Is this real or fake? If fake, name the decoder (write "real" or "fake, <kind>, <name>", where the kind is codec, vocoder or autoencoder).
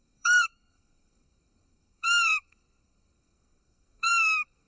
fake, codec, SNAC